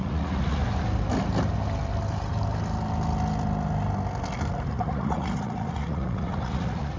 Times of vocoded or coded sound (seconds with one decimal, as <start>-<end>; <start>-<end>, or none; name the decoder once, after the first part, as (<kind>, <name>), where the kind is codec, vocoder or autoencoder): 0.0-0.6 (vocoder, Vocos); 4.7-7.0